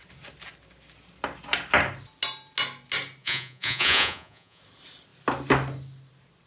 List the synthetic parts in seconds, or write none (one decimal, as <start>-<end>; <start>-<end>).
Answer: 3.2-4.6